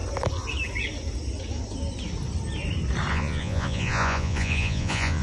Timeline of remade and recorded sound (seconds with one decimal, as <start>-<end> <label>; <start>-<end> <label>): 0.0-3.1 recorded; 3.1-5.2 remade